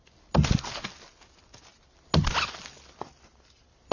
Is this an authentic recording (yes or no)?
yes